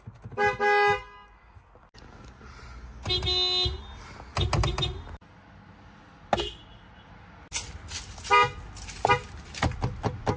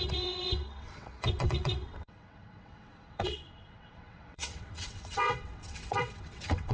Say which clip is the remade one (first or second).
second